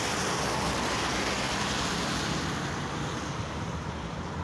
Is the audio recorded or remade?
recorded